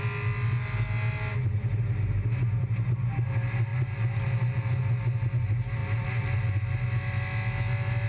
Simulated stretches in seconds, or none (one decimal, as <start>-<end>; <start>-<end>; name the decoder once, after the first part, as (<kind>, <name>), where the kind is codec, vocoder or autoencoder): none